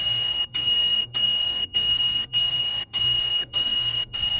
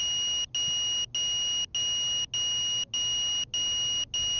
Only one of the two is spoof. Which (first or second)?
first